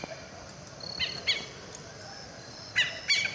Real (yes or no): yes